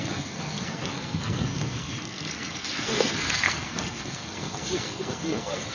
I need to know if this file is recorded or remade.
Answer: remade